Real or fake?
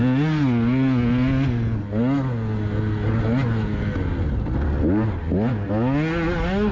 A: real